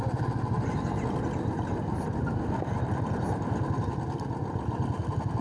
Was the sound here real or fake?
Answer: real